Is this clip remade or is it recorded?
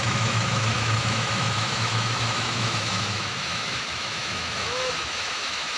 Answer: remade